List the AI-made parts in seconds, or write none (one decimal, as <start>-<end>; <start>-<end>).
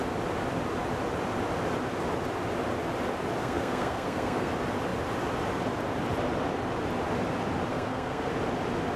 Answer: 3.4-4.5; 7.7-8.3